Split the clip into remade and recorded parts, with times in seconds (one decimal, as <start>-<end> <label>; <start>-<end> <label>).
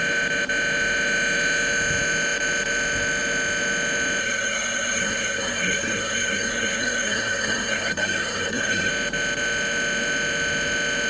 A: 0.0-4.2 recorded; 4.2-8.9 remade; 8.9-11.1 recorded